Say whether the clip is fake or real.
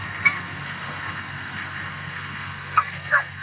fake